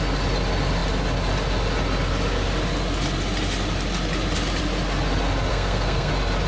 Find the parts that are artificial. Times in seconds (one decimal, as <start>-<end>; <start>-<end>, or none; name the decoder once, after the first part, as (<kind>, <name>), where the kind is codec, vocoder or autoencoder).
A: 5.5-6.1 (codec, SNAC)